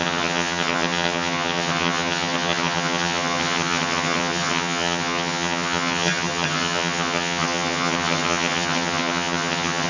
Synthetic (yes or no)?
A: yes